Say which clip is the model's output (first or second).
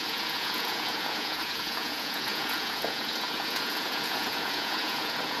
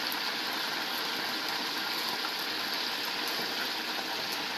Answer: first